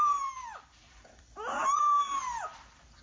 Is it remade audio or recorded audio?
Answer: remade